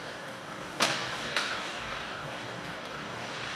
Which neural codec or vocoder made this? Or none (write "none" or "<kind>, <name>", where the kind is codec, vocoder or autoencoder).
codec, DAC